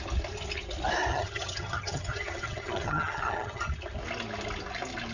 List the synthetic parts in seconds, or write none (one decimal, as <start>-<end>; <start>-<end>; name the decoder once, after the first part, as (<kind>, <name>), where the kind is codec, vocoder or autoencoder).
1.1-3.6 (vocoder, HiFi-GAN)